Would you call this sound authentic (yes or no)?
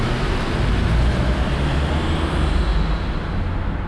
yes